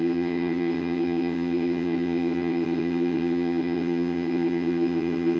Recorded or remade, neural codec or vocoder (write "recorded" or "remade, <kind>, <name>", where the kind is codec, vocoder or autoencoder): remade, vocoder, HiFi-GAN